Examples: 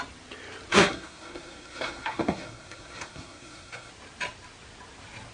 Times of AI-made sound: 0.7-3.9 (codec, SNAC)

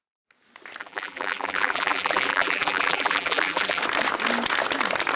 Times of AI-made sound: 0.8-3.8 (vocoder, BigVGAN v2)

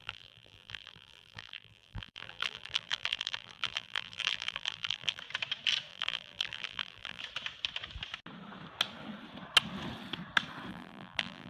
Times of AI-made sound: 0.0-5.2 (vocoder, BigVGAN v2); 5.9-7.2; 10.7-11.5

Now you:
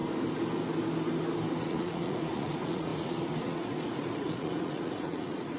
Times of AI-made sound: 1.6-5.6 (vocoder, Vocos)

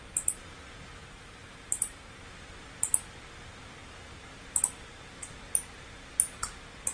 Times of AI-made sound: 1.0-2.2 (vocoder, BigVGAN v2)

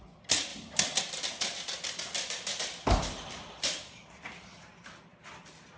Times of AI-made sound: none